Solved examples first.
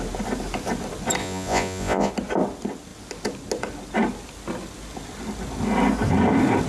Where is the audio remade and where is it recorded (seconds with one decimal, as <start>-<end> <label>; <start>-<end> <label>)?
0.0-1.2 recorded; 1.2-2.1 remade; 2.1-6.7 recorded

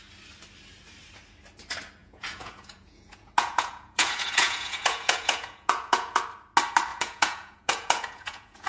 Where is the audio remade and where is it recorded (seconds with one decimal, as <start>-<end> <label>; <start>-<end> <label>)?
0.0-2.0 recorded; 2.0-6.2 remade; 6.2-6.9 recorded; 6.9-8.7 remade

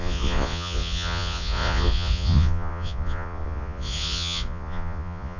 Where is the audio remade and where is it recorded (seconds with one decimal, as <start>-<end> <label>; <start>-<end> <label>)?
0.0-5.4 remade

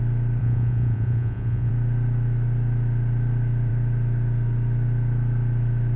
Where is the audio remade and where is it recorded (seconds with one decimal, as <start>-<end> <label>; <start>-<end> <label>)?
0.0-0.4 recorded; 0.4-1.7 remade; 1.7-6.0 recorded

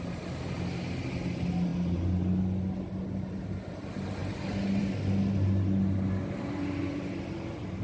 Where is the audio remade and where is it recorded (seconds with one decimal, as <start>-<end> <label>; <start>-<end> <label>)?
0.0-7.8 recorded

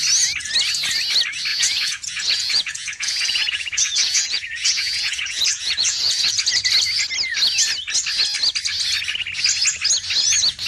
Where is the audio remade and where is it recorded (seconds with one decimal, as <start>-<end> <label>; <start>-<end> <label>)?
0.0-1.5 recorded; 1.5-6.7 remade; 6.7-10.7 recorded

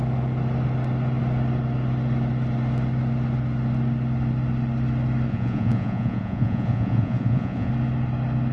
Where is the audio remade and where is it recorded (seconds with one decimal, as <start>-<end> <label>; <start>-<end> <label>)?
0.0-5.3 recorded; 5.3-7.7 remade; 7.7-8.5 recorded